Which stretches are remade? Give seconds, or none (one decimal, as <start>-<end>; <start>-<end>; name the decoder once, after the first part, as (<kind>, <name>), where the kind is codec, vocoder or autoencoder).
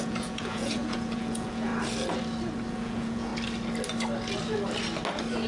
0.0-1.7 (vocoder, Vocos); 2.7-3.3